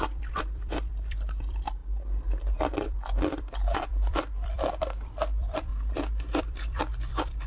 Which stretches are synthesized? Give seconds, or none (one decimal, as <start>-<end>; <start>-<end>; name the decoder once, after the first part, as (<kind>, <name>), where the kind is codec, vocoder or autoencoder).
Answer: 0.0-1.8 (vocoder, BigVGAN v2); 2.6-5.7; 6.4-7.5